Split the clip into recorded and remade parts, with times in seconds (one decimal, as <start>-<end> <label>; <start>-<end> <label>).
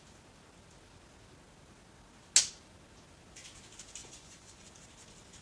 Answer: 0.0-4.0 recorded; 4.0-4.7 remade; 4.7-5.4 recorded